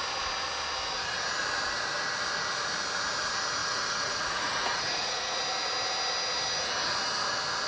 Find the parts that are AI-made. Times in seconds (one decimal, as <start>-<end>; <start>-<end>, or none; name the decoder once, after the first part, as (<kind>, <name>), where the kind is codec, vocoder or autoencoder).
3.6-5.4 (vocoder, Vocos)